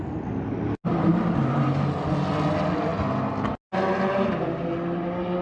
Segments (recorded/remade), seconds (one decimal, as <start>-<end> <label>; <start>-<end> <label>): 0.0-5.4 recorded